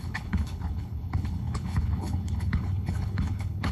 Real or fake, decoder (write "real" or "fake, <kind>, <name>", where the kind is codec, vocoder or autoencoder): fake, codec, HILCodec